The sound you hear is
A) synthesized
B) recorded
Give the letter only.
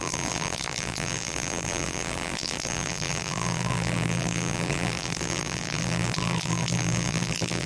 A